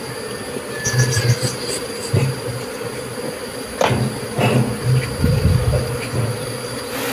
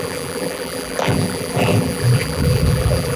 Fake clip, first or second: second